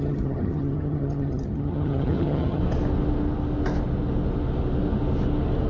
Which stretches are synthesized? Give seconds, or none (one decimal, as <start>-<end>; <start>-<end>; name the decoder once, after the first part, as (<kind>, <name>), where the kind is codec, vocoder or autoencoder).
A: 0.0-2.6 (vocoder, HiFi-GAN)